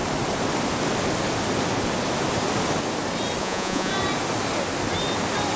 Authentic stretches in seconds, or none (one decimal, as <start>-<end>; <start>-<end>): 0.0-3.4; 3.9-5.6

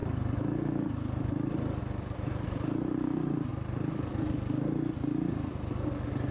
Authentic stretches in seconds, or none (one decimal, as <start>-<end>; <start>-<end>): 0.0-1.8; 3.5-6.3

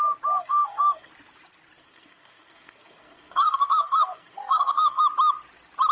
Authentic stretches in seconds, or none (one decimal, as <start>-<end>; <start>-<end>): 0.0-0.4; 1.1-1.8; 5.0-5.9